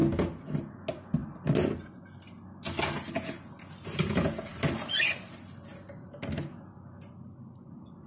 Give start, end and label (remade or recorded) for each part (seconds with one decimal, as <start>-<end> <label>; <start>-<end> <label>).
0.0-8.1 recorded